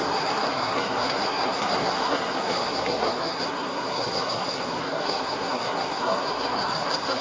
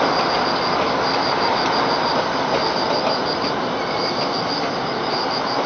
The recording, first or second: second